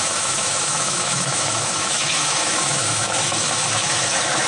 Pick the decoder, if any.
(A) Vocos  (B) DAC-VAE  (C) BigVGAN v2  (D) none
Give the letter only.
B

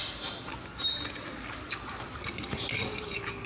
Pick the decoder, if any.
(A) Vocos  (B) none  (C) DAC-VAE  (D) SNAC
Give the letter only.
B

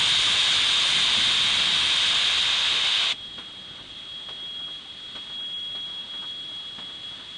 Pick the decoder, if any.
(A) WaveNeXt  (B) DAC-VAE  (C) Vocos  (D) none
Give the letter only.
D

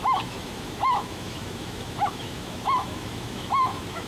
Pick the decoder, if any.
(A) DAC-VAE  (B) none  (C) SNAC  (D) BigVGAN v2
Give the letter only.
A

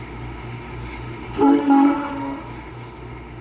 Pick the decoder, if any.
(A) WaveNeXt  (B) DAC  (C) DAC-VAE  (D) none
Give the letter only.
C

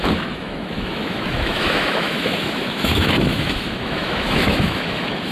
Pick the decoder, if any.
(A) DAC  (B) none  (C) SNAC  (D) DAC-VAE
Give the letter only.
D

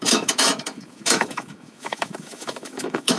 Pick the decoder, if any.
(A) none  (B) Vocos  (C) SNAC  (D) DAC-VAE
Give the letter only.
D